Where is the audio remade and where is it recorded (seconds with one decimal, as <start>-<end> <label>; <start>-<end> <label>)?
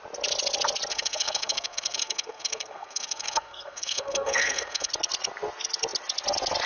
0.0-0.9 recorded; 0.9-4.9 remade; 4.9-6.7 recorded